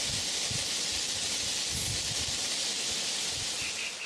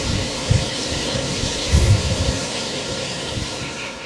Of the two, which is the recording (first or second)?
first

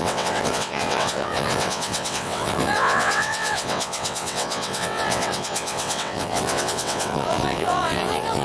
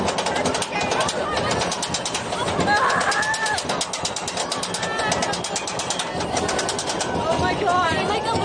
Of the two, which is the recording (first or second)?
second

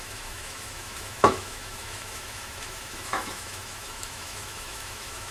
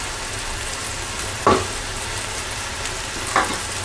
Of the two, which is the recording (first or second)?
second